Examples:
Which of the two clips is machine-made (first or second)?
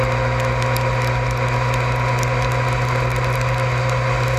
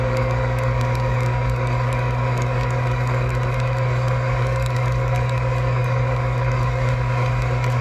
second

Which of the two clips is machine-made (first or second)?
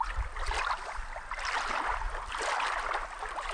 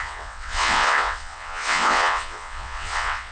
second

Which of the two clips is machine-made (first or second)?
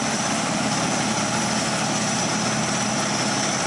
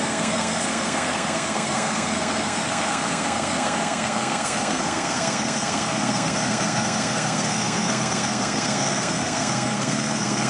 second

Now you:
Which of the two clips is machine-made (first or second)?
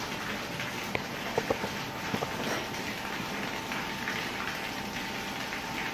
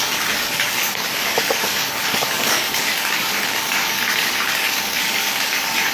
second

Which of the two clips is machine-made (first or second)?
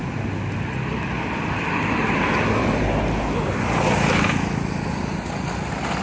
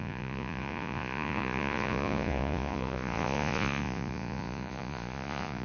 second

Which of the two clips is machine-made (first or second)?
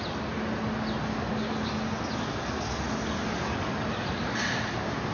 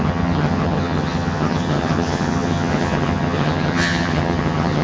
second